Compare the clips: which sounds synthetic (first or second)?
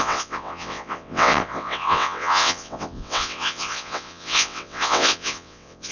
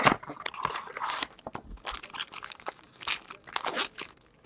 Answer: first